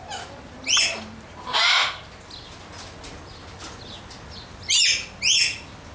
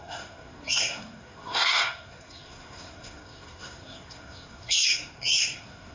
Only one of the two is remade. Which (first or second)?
second